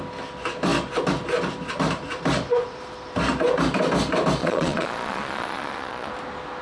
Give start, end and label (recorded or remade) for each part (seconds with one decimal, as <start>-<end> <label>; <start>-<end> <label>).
0.0-4.4 recorded; 4.4-6.1 remade; 6.1-6.6 recorded